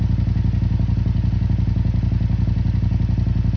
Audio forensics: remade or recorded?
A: recorded